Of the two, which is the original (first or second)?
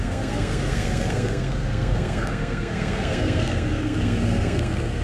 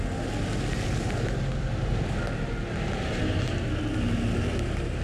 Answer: second